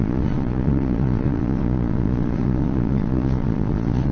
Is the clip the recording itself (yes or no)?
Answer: no